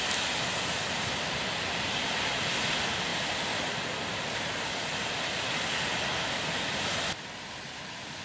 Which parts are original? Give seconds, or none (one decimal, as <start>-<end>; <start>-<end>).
0.0-8.2